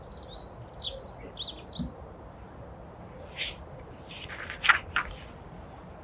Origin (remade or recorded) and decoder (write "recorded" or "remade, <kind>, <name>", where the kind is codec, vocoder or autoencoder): recorded